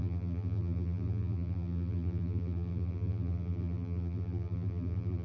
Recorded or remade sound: remade